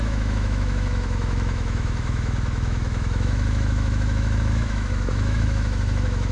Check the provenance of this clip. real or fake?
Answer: fake